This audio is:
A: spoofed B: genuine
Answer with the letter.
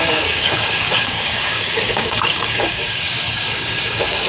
A